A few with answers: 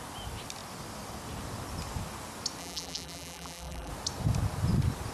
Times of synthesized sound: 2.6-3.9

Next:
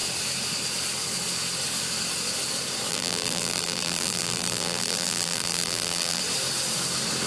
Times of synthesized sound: 2.9-6.2

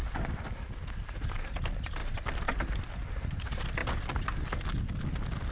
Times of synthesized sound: 1.3-2.0; 3.1-3.8

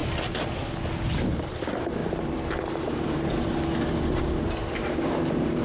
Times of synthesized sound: 2.0-3.3